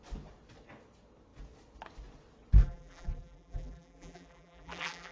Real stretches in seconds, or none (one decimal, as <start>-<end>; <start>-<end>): 0.0-2.6